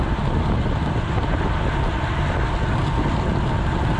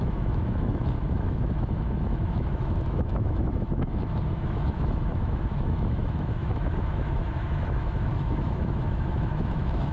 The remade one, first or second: second